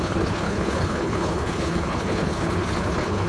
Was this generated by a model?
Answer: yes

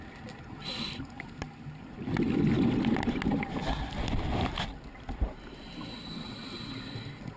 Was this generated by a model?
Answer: no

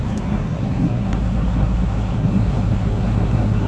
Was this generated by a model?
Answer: yes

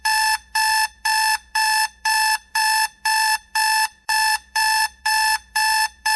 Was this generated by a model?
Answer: yes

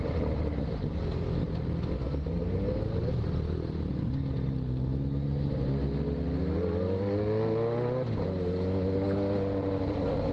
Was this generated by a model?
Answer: no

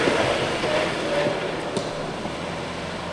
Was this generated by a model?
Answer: no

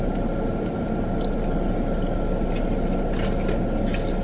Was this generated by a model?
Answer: no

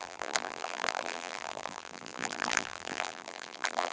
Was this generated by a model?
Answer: yes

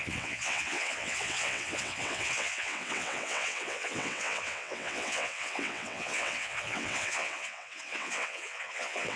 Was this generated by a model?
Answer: yes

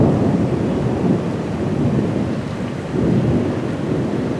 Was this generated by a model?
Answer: no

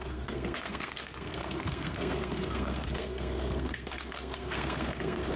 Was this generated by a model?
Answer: yes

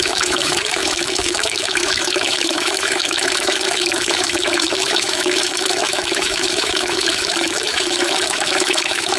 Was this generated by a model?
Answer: yes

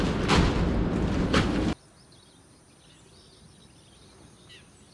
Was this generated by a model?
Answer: no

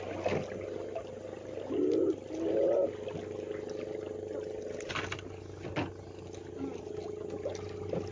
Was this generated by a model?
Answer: no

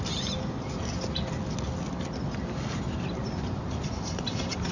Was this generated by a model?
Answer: no